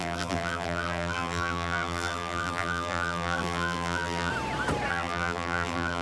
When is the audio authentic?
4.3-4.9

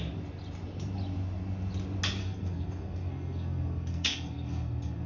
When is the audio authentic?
0.0-2.2